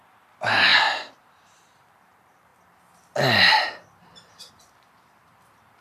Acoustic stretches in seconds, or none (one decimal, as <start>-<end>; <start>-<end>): 2.5-4.5